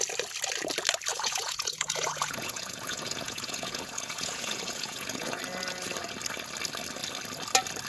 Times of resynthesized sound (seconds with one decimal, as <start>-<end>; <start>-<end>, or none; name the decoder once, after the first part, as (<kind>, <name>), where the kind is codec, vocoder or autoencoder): 1.1-5.4 (vocoder, Vocos)